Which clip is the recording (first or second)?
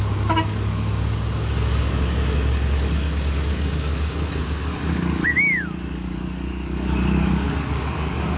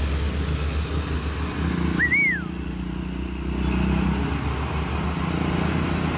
second